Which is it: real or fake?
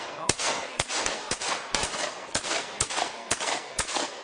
fake